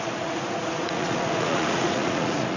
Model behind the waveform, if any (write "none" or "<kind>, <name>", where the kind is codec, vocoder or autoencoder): vocoder, Vocos